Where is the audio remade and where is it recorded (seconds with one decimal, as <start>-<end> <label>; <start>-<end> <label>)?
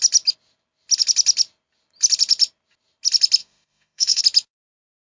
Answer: 0.0-3.4 recorded; 3.4-4.2 remade; 4.2-5.2 recorded